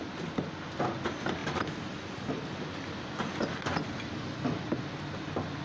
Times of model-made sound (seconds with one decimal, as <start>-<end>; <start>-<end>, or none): 1.4-4.8